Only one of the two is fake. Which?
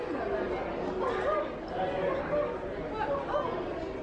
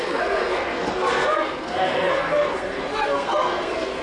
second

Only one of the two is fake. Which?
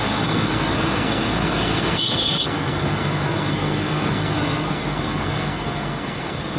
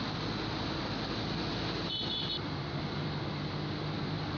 first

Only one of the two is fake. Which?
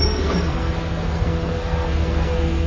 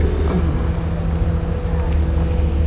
first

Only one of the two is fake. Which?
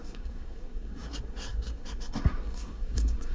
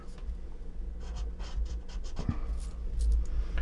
first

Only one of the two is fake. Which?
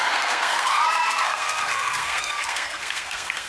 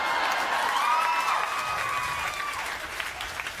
first